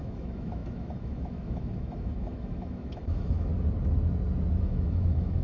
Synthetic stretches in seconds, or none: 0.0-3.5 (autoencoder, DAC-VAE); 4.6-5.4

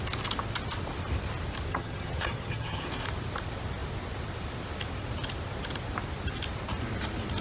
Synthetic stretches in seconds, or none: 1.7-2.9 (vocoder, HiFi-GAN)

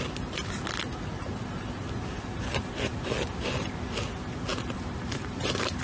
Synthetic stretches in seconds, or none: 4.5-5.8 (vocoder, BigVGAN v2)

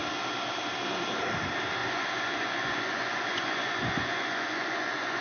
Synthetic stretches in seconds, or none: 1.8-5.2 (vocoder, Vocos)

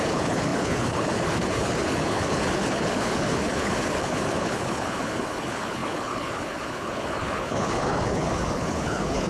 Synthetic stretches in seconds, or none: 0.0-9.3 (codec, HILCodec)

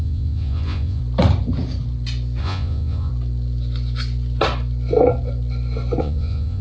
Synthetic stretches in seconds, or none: 0.0-1.0 (vocoder, Vocos); 2.4-3.1; 6.0-6.6

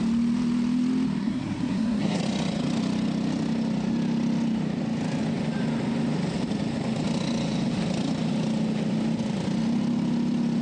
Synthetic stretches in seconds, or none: 1.2-2.2 (codec, SNAC)